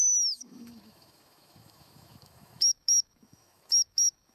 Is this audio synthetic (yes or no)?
yes